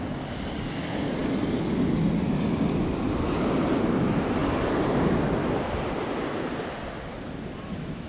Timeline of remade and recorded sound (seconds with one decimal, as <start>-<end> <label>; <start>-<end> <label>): 0.0-8.1 recorded